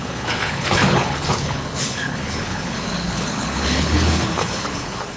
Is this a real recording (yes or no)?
no